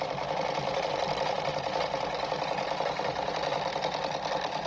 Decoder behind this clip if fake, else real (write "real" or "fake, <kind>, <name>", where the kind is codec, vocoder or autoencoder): real